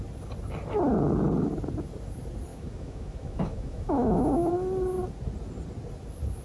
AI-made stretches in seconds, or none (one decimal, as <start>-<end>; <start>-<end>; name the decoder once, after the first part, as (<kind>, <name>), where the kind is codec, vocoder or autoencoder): 2.5-4.5 (autoencoder, DAC-VAE)